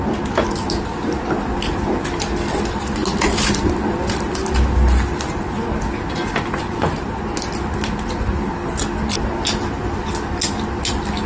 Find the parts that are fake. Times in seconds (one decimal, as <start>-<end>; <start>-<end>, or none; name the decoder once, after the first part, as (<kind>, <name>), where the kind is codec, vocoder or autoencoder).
none